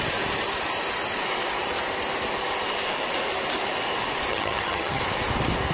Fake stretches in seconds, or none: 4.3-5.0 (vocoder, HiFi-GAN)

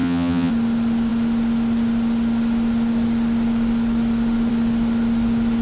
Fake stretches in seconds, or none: 0.0-0.5 (vocoder, HiFi-GAN)

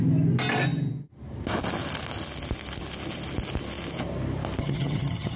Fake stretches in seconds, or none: 4.6-5.4 (vocoder, HiFi-GAN)

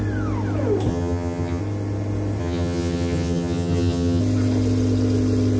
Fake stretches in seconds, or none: 0.9-1.6 (vocoder, HiFi-GAN); 2.4-4.2

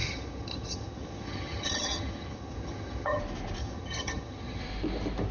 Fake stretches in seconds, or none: 0.0-3.2 (vocoder, HiFi-GAN); 3.6-4.6

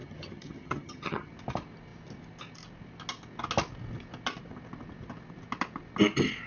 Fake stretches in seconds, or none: 0.0-1.3 (vocoder, HiFi-GAN)